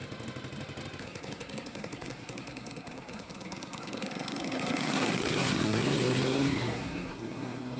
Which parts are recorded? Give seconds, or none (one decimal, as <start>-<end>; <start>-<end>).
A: 0.0-1.0